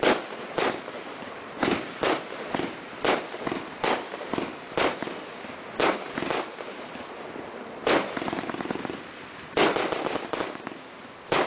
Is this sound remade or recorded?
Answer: recorded